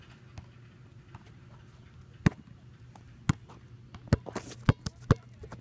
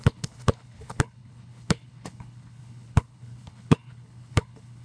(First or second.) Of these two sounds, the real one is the first